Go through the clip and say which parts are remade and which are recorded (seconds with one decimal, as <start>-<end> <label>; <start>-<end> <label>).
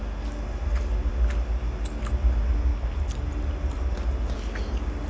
0.0-5.1 recorded